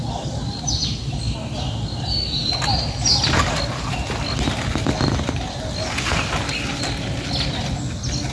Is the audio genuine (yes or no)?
yes